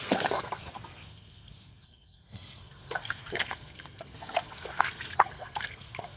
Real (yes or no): no